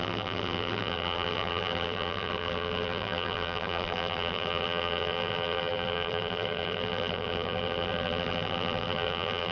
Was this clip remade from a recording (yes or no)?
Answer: yes